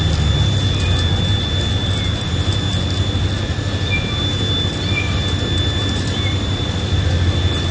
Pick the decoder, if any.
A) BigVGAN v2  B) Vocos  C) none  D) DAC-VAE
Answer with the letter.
C